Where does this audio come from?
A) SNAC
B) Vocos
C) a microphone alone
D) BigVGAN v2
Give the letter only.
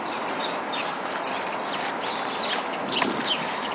C